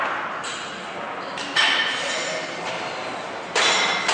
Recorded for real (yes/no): yes